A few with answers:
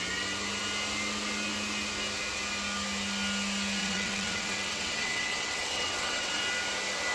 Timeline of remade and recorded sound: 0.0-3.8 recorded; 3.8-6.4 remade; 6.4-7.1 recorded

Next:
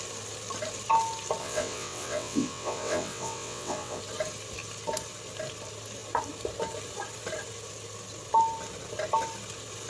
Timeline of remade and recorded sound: 0.0-1.4 recorded; 1.4-4.0 remade; 4.0-9.9 recorded

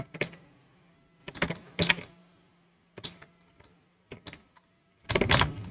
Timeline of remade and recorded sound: 0.0-5.7 recorded

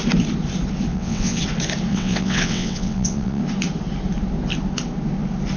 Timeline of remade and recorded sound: 0.0-0.9 recorded; 0.9-1.4 remade; 1.4-1.9 recorded; 1.9-3.4 remade; 3.4-5.6 recorded

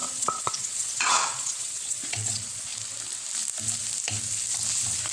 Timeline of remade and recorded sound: 0.0-2.7 remade; 2.7-5.1 recorded

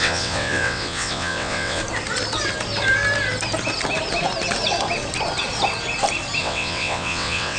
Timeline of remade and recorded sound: 0.0-1.8 remade; 1.8-6.4 recorded; 6.4-7.6 remade